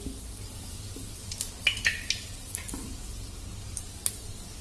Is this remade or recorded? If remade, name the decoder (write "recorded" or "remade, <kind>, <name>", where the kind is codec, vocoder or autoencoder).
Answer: recorded